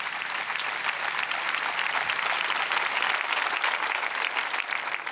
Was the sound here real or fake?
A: real